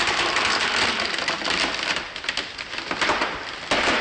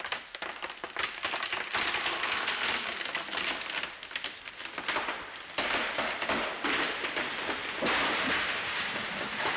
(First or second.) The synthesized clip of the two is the first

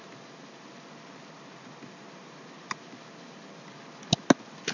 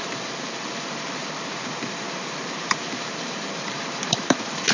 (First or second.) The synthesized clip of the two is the second